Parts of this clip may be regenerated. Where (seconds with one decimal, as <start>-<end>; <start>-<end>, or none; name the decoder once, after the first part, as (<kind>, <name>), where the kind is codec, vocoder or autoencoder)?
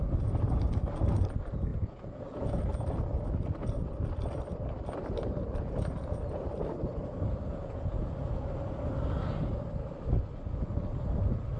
1.7-2.6 (vocoder, Vocos); 7.5-8.0